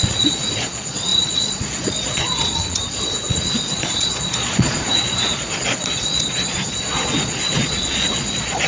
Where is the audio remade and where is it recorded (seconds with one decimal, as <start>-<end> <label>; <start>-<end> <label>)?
0.0-8.7 remade